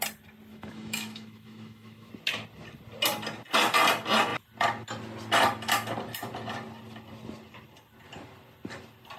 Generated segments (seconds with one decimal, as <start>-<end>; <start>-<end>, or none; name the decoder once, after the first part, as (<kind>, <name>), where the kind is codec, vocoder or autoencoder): 0.5-2.1 (autoencoder, DAC-VAE)